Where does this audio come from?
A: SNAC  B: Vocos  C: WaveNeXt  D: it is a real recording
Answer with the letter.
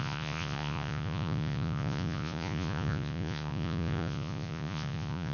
B